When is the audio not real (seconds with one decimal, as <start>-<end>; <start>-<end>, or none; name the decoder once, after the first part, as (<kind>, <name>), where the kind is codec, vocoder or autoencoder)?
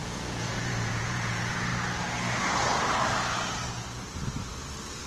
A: 0.0-1.7 (vocoder, Vocos)